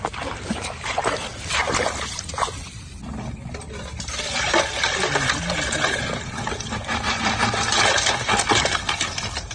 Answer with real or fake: real